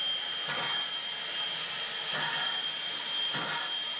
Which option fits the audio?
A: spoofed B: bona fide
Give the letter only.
B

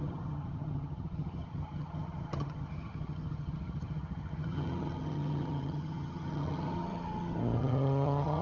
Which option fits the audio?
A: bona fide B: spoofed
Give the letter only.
B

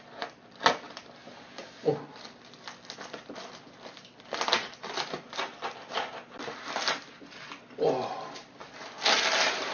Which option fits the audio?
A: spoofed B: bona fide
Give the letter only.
B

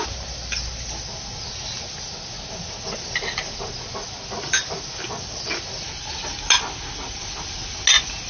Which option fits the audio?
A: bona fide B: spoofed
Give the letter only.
A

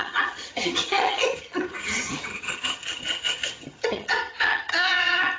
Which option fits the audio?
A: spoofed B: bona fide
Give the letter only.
A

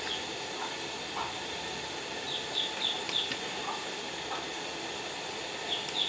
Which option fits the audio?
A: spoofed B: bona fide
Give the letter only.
B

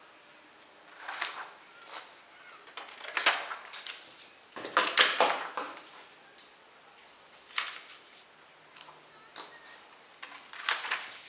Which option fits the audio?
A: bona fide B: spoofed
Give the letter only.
A